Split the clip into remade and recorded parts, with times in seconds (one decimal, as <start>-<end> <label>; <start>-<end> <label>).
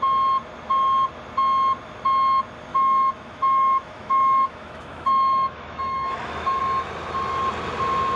0.0-2.7 recorded; 2.7-6.6 remade; 6.6-8.2 recorded